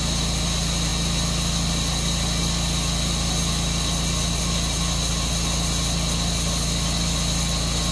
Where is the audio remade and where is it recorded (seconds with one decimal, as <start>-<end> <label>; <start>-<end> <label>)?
0.0-7.9 recorded